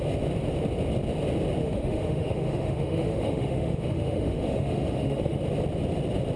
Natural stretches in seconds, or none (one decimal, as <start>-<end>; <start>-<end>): 0.0-1.6; 5.4-6.4